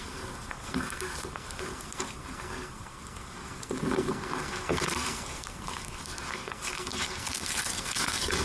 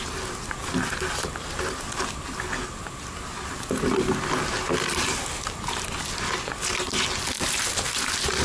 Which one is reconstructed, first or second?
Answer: first